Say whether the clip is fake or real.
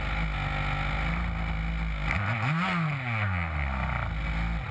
real